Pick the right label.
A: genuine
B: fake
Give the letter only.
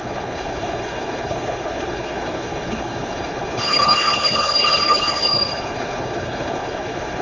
B